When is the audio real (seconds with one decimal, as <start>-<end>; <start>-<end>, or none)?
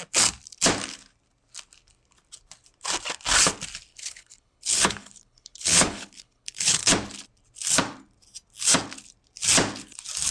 0.0-3.9; 6.9-10.3